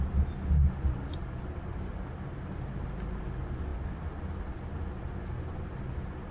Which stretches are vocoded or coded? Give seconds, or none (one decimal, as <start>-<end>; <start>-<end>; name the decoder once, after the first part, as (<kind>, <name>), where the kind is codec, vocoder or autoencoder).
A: none